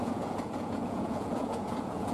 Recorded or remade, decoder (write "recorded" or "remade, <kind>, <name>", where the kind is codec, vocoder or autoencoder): remade, vocoder, Vocos